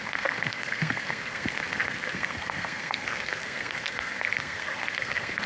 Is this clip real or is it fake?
fake